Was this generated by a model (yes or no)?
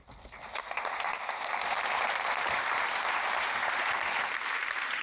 yes